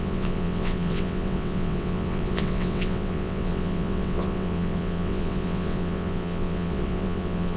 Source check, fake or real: fake